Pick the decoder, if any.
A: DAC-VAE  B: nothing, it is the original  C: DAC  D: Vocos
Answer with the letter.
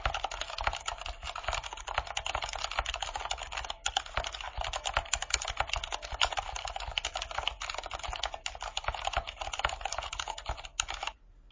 B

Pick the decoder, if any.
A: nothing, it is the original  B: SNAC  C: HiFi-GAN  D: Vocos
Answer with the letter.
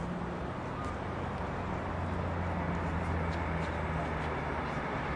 A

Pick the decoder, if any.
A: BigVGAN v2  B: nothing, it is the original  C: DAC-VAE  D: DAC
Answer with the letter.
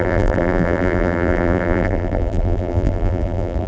A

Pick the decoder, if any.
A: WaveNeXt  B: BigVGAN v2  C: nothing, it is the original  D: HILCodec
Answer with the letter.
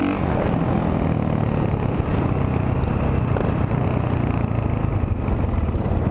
C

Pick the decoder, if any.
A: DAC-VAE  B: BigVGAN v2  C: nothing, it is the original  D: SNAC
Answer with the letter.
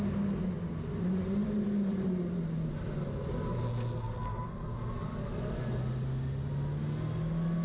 C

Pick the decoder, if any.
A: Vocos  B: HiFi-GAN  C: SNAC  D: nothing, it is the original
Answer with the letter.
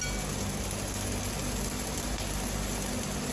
D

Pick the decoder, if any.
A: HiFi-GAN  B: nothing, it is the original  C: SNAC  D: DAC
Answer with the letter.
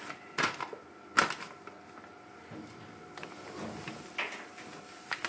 B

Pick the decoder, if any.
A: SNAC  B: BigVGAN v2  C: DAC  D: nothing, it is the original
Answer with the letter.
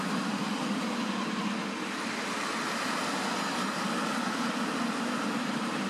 D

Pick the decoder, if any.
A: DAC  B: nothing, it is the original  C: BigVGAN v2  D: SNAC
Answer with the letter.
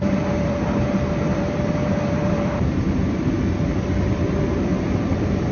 C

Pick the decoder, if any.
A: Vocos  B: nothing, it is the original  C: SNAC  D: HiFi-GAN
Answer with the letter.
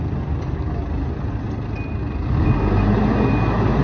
B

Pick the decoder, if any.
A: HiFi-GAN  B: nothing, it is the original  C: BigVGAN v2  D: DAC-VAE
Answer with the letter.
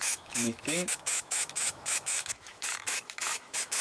D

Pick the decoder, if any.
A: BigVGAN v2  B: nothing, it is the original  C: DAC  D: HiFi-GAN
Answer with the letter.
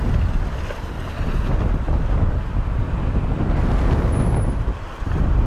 B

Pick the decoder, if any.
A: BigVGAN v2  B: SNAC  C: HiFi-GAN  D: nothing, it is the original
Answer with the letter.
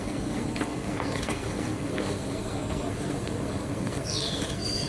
B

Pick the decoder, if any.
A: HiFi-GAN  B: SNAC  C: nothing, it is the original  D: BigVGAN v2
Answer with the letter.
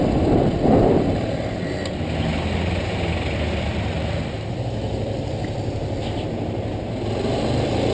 C